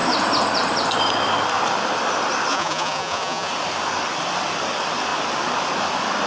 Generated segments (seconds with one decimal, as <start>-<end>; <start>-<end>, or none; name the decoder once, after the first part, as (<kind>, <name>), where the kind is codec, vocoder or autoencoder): 2.5-3.5 (vocoder, Vocos)